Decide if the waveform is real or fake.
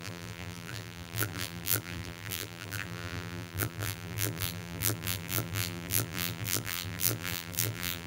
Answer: fake